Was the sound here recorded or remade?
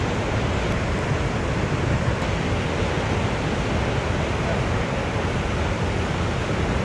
recorded